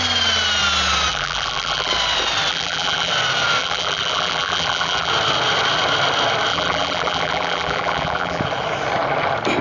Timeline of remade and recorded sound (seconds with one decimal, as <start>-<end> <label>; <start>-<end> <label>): 0.0-1.1 recorded; 1.1-1.9 remade; 1.9-2.5 recorded; 2.5-3.1 remade; 3.1-3.6 recorded; 3.6-5.1 remade; 5.1-6.5 recorded; 6.5-8.4 remade; 8.4-9.6 recorded